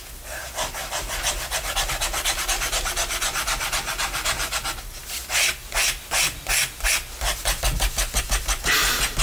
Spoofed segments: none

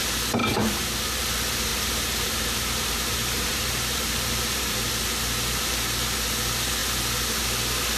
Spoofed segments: 0.4-1.2 (vocoder, BigVGAN v2); 1.7-4.9